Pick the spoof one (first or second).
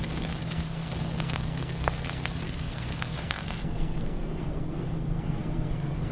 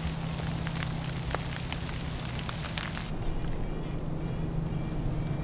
first